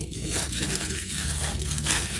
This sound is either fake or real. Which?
fake